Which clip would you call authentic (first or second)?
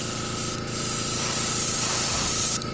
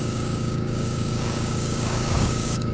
first